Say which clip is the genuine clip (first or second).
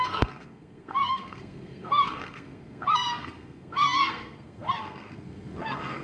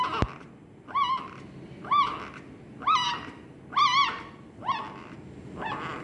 second